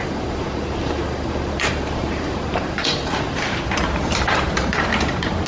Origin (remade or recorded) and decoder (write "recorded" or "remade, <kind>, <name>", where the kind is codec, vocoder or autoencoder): remade, vocoder, BigVGAN v2